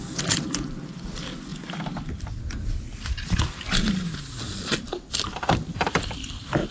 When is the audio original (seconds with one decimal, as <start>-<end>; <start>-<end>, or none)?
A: 0.0-6.7

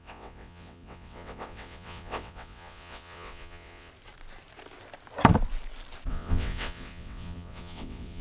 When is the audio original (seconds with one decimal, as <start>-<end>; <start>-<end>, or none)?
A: 3.9-6.1

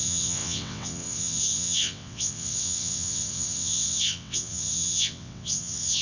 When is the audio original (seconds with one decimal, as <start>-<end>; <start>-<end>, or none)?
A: none